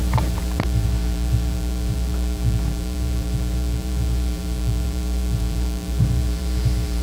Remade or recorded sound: remade